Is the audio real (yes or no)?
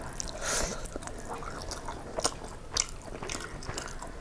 yes